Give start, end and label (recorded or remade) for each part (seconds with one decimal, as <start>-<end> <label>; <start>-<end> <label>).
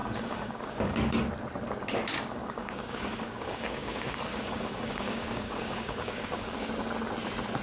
0.0-1.3 remade; 1.3-2.4 recorded; 2.4-6.7 remade; 6.7-7.6 recorded